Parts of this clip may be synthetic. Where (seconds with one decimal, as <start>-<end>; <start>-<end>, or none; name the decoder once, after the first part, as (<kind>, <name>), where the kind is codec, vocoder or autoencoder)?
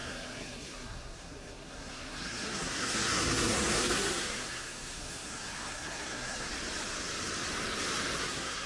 0.0-6.5 (codec, SNAC); 8.2-8.7